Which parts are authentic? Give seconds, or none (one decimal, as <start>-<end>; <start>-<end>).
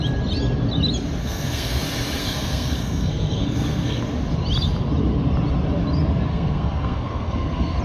0.0-1.2; 1.8-2.2; 4.0-6.3